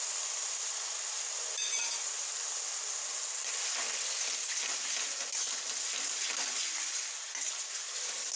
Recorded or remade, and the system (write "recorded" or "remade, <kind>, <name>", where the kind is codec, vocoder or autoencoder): recorded